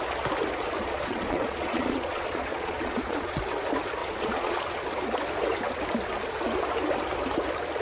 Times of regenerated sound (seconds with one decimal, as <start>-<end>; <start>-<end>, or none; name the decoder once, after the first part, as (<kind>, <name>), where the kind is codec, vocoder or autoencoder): 0.8-3.4 (vocoder, Vocos); 4.0-4.6